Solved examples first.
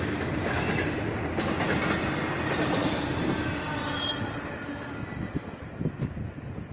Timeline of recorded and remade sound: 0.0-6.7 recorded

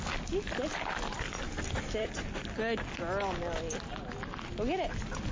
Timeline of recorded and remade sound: 0.0-5.3 recorded